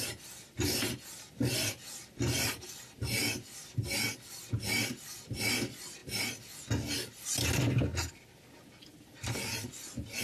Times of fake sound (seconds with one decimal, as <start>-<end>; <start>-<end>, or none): none